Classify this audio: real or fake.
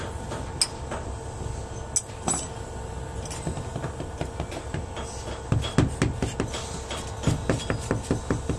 real